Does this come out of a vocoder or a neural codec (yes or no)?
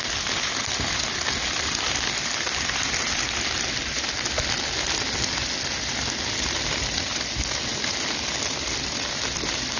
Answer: no